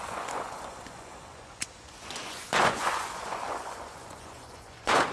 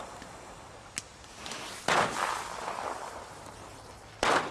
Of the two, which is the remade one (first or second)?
first